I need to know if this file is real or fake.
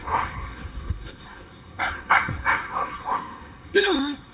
fake